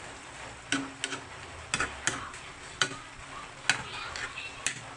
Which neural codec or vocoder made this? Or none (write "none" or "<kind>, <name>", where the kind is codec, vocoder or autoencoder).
none